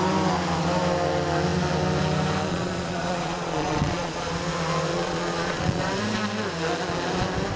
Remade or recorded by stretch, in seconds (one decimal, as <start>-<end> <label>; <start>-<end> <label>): 0.0-2.5 recorded; 2.5-4.3 remade; 4.3-4.9 recorded; 4.9-6.0 remade; 6.0-7.6 recorded